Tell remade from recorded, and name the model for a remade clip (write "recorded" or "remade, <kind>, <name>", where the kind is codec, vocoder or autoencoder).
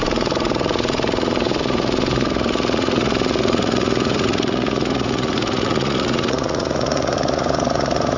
remade, vocoder, Vocos